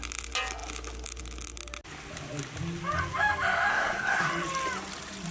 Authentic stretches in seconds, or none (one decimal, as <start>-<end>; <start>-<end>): 0.0-3.7; 4.3-5.3